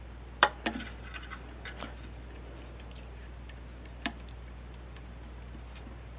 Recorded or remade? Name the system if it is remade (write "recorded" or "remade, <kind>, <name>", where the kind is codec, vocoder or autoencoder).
remade, vocoder, BigVGAN v2